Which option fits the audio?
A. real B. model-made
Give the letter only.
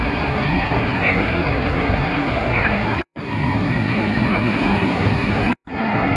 B